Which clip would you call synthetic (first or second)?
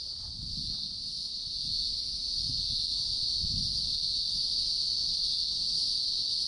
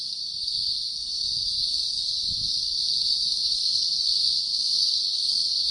second